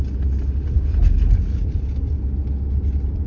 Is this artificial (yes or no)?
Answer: no